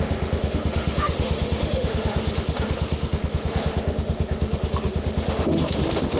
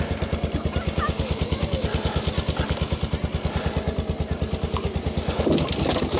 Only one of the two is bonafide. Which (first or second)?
second